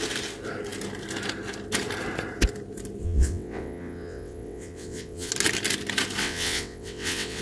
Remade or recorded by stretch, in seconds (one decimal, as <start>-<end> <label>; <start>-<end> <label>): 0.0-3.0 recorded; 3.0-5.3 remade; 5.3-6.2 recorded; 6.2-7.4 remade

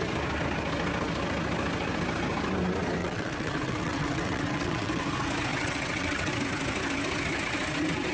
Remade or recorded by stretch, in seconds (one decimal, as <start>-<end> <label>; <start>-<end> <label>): 0.0-3.0 recorded; 3.0-5.0 remade; 5.0-5.5 recorded; 5.5-6.3 remade; 6.3-8.1 recorded

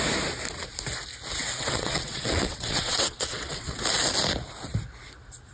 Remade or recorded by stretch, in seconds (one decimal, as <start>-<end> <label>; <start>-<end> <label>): 0.0-1.4 recorded; 1.4-3.8 remade; 3.8-5.5 recorded

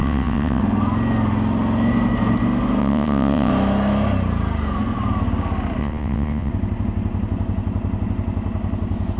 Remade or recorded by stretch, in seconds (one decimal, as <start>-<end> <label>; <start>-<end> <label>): 0.0-0.6 remade; 0.6-2.8 recorded; 2.8-3.5 remade; 3.5-5.8 recorded; 5.8-6.5 remade; 6.5-9.2 recorded

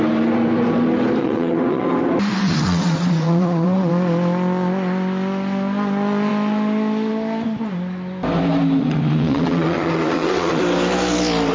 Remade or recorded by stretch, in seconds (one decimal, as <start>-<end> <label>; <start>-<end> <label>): 0.0-1.2 recorded; 1.2-1.9 remade; 1.9-2.3 recorded; 2.3-3.9 remade; 3.9-8.8 recorded; 8.8-10.6 remade; 10.6-11.5 recorded

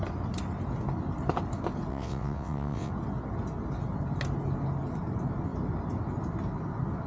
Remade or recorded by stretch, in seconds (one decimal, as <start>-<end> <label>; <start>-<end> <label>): 0.0-1.9 recorded; 1.9-2.9 remade; 2.9-7.1 recorded

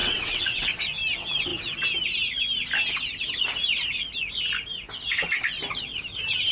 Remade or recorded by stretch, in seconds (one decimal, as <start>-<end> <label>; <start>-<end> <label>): 0.0-0.8 remade; 0.8-6.5 recorded

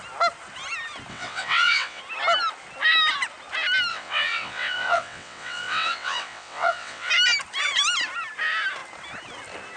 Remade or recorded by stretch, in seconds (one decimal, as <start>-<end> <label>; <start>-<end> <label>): 0.0-1.1 recorded; 1.1-2.0 remade; 2.0-3.9 recorded; 3.9-7.1 remade; 7.1-9.8 recorded